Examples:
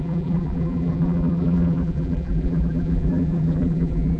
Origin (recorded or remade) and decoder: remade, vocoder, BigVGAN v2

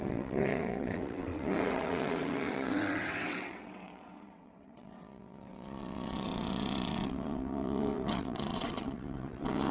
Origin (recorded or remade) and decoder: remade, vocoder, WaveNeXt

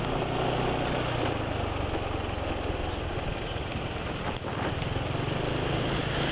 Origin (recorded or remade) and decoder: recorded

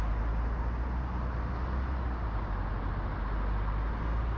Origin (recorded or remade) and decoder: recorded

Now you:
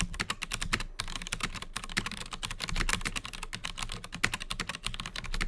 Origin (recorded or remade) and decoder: recorded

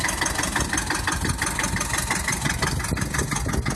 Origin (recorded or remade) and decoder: recorded